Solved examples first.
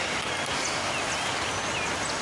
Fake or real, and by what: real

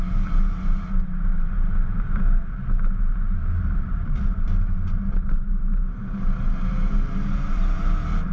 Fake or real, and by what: fake, vocoder, BigVGAN v2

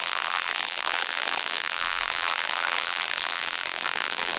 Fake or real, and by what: fake, vocoder, BigVGAN v2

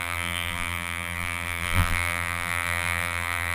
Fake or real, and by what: fake, vocoder, BigVGAN v2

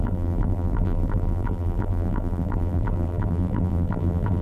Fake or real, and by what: fake, vocoder, BigVGAN v2